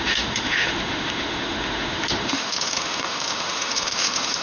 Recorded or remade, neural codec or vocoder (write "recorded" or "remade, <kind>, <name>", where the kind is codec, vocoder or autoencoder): remade, autoencoder, DAC-VAE